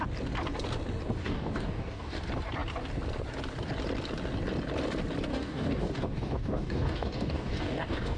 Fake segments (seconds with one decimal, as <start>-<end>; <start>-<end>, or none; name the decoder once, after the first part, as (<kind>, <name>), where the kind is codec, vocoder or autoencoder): 1.2-2.2 (codec, DAC); 5.3-8.2